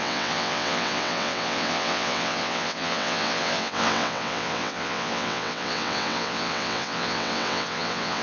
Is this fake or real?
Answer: fake